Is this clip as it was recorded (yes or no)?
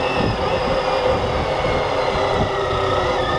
yes